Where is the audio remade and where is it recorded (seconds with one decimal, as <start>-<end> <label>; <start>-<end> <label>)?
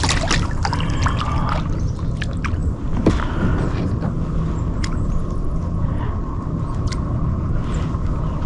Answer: 0.0-8.5 recorded